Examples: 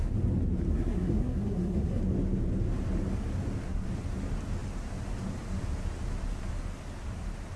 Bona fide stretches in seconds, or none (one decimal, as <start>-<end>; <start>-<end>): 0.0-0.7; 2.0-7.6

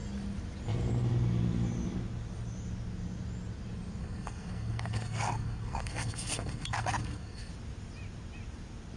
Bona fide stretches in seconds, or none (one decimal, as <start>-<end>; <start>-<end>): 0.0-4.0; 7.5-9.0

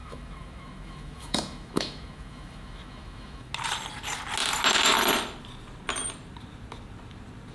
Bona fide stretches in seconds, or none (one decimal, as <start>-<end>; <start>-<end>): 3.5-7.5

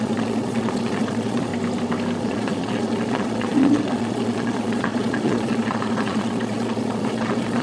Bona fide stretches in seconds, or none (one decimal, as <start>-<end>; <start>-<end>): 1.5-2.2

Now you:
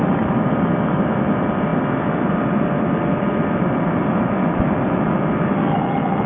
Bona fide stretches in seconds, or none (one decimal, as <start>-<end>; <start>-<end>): 0.0-6.3

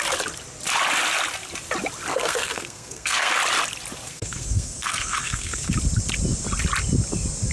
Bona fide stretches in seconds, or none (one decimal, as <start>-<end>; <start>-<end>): 0.0-2.1; 3.3-4.1; 5.7-7.5